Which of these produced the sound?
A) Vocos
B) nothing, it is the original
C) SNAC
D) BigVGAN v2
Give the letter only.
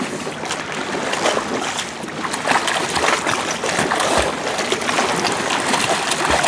B